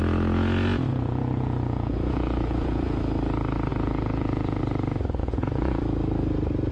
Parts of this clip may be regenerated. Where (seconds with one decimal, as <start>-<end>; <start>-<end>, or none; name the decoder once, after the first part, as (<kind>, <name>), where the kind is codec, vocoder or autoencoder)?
0.9-3.0 (vocoder, Vocos); 3.7-4.6; 5.2-5.8